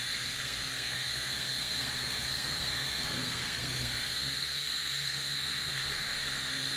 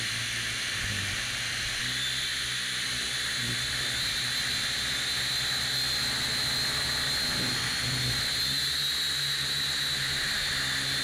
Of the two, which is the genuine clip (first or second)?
second